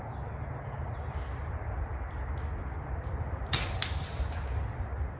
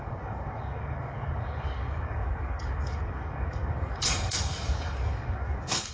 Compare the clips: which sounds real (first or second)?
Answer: first